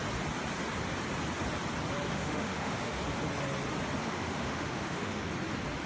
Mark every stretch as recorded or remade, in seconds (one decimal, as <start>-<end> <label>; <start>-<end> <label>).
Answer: 0.0-2.1 recorded; 2.1-3.0 remade; 3.0-4.0 recorded; 4.0-5.3 remade; 5.3-5.9 recorded